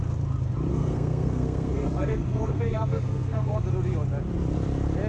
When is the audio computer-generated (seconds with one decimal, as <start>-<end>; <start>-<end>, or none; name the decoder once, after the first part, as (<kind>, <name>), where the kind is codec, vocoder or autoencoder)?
0.7-3.6 (codec, SNAC)